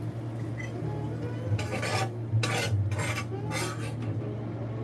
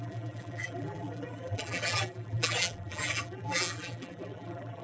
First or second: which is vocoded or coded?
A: second